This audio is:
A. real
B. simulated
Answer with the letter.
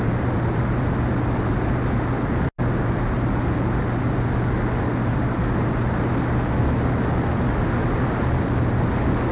A